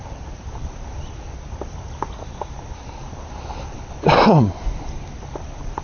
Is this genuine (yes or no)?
yes